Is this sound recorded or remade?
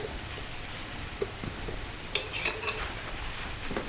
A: recorded